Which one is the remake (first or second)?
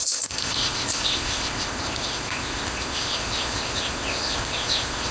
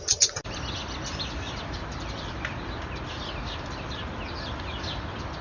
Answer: first